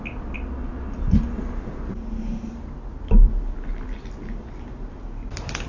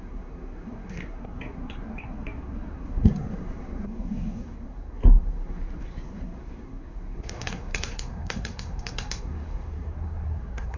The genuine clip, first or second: first